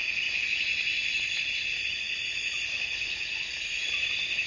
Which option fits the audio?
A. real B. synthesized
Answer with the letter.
A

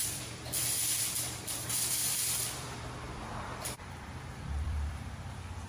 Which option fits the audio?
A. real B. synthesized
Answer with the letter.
B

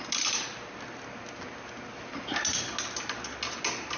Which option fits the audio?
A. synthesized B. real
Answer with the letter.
B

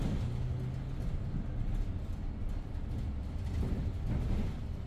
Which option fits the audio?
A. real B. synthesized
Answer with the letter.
A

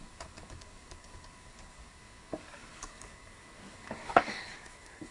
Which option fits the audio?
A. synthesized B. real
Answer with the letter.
A